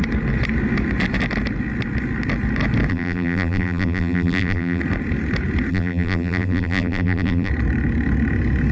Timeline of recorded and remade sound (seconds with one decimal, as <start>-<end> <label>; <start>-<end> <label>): 0.0-2.9 recorded; 2.9-4.8 remade; 4.8-5.7 recorded; 5.7-7.5 remade; 7.5-8.7 recorded